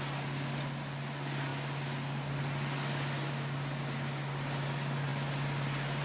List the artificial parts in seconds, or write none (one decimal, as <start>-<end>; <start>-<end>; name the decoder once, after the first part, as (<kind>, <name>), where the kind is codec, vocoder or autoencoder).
none